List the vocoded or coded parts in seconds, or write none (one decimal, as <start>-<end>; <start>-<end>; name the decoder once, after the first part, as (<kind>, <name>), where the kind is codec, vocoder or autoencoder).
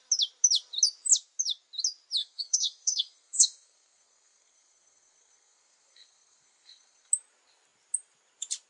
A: 2.2-7.1 (codec, SNAC)